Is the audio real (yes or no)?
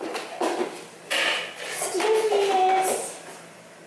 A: yes